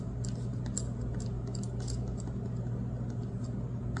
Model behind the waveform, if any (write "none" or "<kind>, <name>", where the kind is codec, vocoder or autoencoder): none